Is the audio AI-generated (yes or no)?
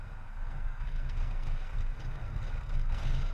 yes